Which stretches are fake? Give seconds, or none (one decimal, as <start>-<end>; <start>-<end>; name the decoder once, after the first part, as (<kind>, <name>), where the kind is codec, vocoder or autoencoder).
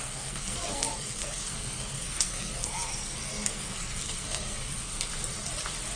0.0-5.1 (codec, SNAC)